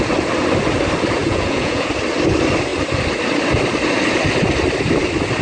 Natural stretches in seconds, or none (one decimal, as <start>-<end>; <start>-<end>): 0.0-1.2; 1.9-5.4